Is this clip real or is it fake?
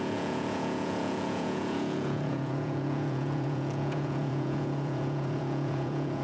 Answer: fake